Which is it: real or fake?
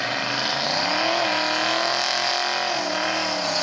real